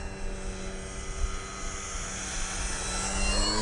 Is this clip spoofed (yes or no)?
no